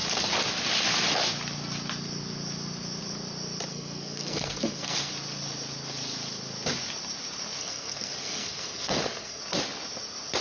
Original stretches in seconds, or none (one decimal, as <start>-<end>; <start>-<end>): 0.0-3.7; 5.1-7.6; 9.4-10.4